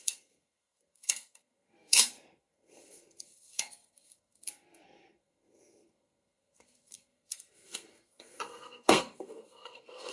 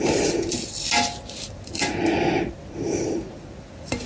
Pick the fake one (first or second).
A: first